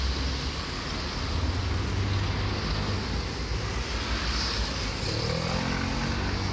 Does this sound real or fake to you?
real